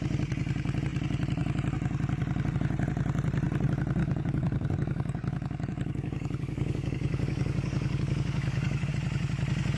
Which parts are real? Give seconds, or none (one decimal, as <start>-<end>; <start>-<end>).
0.0-4.0; 8.9-9.8